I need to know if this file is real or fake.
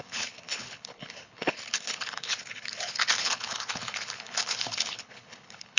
fake